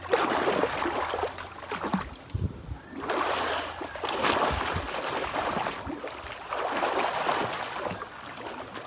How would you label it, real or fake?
real